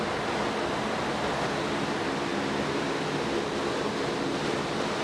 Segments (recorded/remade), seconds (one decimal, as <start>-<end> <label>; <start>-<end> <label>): 0.0-5.0 recorded